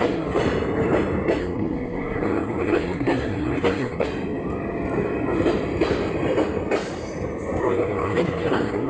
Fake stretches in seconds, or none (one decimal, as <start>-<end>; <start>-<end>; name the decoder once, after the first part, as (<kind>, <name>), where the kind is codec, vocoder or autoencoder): 0.0-0.4 (codec, SNAC); 1.4-4.1; 7.6-8.9